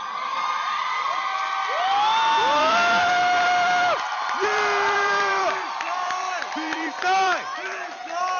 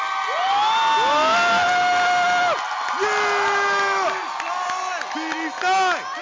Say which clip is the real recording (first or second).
second